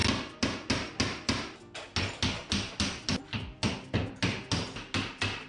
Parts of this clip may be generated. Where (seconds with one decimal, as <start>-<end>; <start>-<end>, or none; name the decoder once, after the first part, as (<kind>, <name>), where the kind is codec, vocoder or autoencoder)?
none